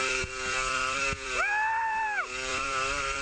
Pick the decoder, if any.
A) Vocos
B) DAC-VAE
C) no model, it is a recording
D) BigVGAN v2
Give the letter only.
D